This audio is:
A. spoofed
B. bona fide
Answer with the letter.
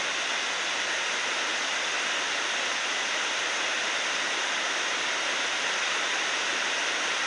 B